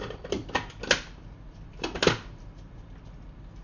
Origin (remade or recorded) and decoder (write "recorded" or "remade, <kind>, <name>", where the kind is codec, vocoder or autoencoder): recorded